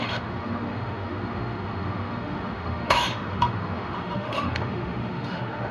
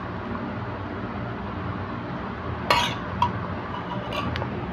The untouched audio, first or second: second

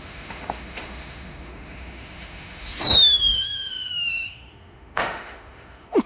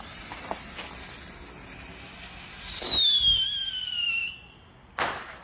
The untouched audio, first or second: second